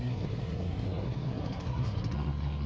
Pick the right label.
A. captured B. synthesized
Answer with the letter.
B